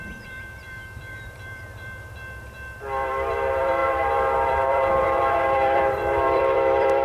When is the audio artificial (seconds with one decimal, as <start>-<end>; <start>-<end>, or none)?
0.0-7.0